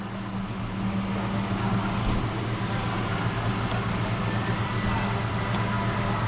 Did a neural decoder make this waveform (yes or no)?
no